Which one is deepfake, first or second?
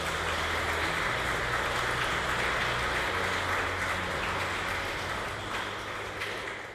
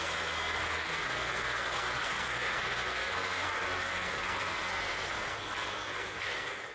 second